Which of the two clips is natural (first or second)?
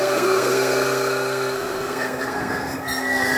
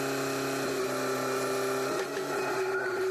second